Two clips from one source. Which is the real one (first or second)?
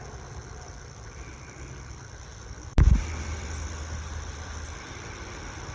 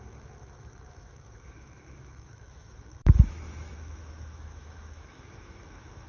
first